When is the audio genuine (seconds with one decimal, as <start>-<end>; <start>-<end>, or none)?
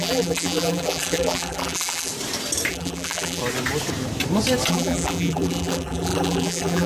2.1-2.7; 3.4-4.7